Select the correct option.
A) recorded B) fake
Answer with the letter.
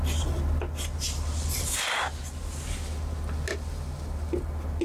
A